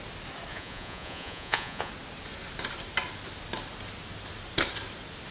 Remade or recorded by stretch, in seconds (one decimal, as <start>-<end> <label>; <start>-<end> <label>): 0.0-0.5 recorded; 0.5-1.9 remade; 1.9-5.3 recorded